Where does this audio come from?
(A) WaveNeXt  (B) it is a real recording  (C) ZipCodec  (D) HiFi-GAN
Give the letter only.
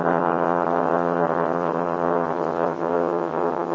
D